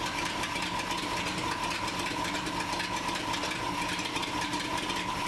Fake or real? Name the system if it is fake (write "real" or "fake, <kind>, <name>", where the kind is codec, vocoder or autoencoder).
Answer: real